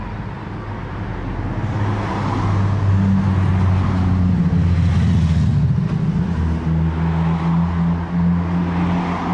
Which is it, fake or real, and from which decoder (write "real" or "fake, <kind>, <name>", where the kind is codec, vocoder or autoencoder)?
real